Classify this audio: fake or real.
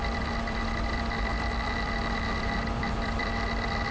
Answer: fake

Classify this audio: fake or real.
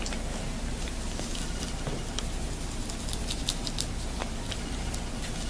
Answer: real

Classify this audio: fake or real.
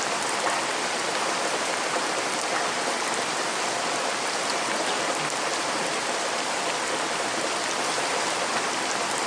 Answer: fake